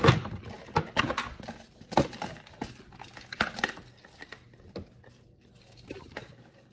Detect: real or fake real